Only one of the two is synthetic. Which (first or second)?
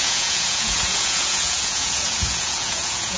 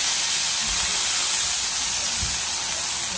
first